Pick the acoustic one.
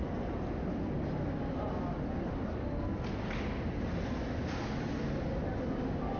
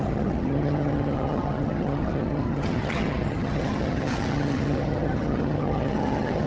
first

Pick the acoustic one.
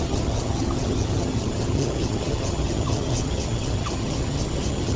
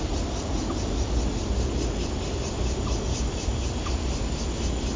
second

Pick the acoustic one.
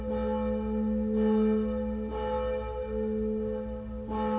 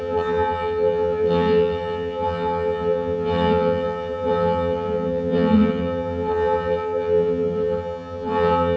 first